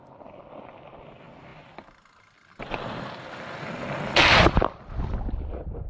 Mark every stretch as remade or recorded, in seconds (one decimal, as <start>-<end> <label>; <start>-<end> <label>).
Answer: 0.0-5.9 recorded